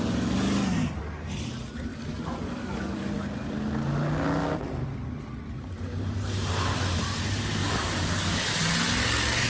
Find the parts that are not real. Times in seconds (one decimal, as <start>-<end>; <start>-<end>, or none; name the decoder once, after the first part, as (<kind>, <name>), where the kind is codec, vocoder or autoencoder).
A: 1.9-3.1 (codec, DAC); 7.6-8.5